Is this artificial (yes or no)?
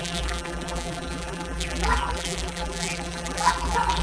yes